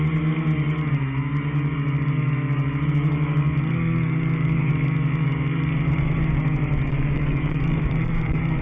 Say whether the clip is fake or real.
fake